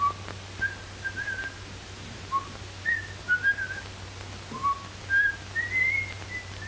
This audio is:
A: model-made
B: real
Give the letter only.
B